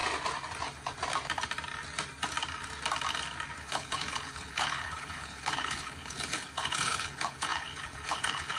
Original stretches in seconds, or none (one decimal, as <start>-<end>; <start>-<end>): 0.0-3.6